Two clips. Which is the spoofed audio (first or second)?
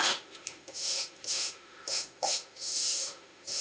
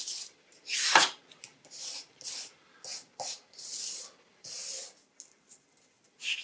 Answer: first